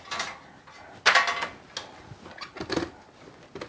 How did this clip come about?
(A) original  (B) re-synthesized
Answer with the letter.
A